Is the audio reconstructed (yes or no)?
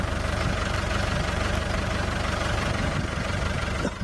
no